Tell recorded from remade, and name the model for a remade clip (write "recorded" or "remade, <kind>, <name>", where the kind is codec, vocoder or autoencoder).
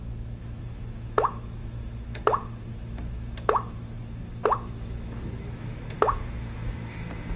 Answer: remade, autoencoder, DAC-VAE